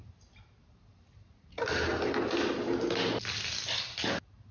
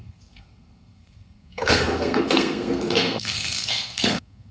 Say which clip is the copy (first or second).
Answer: second